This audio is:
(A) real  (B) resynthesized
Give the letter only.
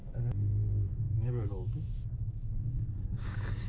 B